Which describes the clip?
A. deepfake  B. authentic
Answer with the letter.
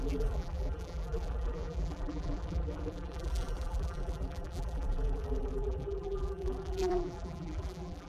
A